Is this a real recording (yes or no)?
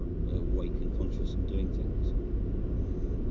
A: yes